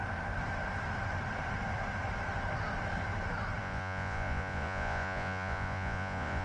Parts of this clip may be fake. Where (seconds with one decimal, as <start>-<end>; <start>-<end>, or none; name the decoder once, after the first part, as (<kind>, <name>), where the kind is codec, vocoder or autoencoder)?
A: 3.6-6.4 (vocoder, Vocos)

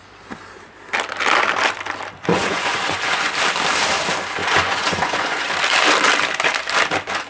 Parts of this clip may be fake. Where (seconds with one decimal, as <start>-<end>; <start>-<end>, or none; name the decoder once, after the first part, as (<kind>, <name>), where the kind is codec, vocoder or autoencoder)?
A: 2.3-3.3 (vocoder, Vocos); 4.4-5.5

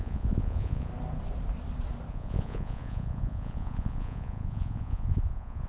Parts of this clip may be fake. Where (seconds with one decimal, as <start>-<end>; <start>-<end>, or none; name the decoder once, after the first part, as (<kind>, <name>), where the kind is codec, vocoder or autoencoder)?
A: 0.0-0.9 (vocoder, Vocos); 2.1-5.7

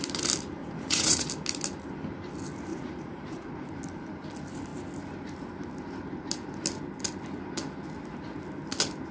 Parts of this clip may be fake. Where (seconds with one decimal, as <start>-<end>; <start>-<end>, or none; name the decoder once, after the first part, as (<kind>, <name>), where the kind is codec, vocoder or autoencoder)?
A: 0.6-1.3 (vocoder, Vocos); 2.7-3.7

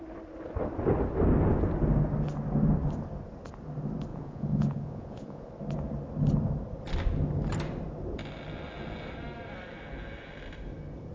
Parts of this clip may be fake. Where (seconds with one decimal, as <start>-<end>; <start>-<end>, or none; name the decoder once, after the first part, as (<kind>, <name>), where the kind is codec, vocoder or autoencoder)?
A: 4.1-5.5 (vocoder, Vocos)

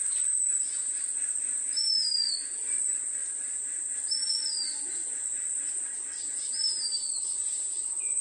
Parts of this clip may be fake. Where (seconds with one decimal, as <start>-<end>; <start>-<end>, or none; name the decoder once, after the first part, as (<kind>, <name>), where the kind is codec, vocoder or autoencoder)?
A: none